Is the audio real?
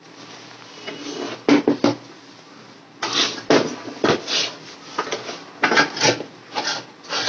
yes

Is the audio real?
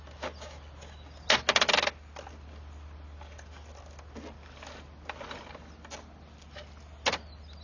yes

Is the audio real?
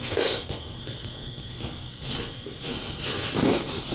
no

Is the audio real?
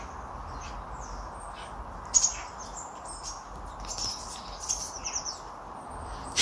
yes